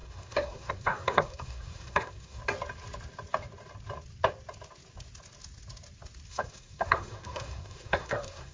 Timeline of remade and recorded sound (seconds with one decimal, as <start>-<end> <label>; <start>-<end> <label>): 0.0-2.4 remade; 2.4-6.3 recorded; 6.3-8.5 remade